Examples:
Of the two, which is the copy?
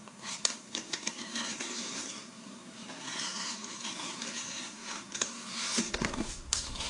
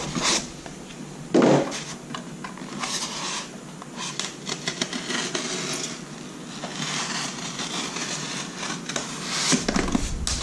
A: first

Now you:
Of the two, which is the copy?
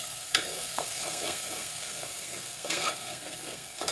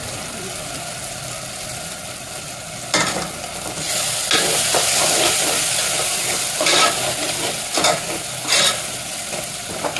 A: first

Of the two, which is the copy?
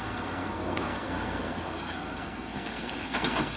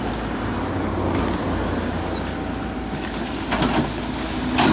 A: first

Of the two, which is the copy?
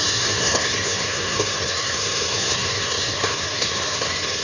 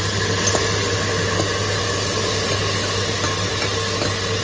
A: first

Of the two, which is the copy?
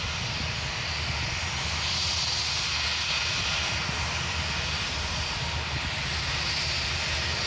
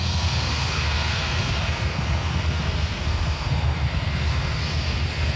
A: second